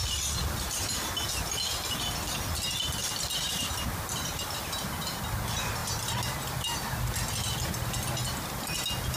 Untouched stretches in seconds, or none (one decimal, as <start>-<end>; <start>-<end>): 0.0-3.0; 5.2-9.2